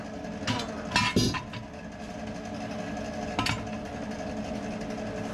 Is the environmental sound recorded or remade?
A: recorded